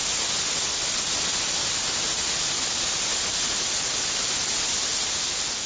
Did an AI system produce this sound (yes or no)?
no